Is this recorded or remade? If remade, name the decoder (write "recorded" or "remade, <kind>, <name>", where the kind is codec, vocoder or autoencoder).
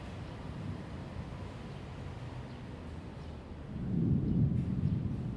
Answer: recorded